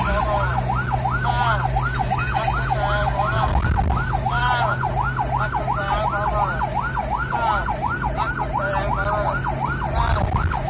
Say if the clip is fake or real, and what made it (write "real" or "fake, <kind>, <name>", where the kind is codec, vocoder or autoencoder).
real